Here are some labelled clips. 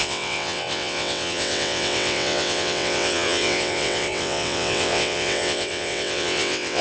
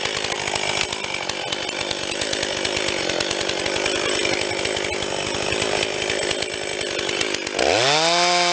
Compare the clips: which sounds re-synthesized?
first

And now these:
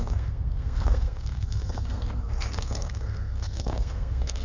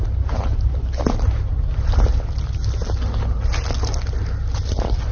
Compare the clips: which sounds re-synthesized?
first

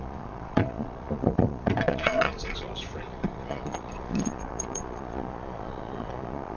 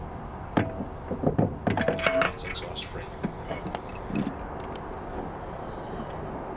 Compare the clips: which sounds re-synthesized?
first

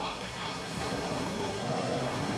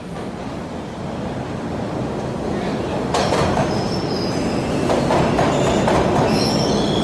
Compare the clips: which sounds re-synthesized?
first